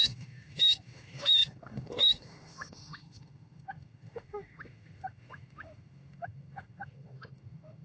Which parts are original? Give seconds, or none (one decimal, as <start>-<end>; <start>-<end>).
none